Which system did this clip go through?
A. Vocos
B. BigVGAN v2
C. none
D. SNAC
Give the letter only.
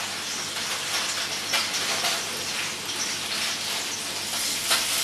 C